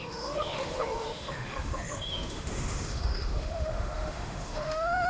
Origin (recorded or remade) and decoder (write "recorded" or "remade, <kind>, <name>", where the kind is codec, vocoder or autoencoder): remade, autoencoder, DAC-VAE